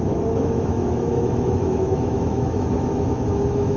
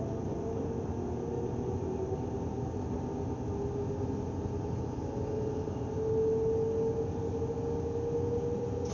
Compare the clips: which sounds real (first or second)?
second